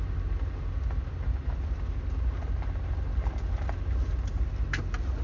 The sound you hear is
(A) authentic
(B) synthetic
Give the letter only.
A